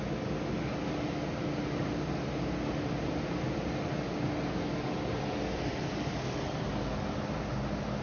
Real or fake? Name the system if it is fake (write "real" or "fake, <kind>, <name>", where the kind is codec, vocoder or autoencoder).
real